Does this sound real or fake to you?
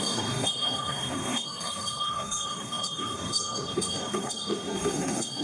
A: fake